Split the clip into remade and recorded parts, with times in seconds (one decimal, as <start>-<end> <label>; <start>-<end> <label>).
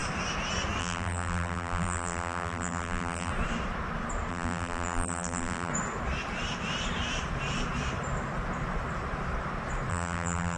0.0-0.8 recorded; 0.8-3.3 remade; 3.3-4.3 recorded; 4.3-5.7 remade; 5.7-9.9 recorded; 9.9-10.6 remade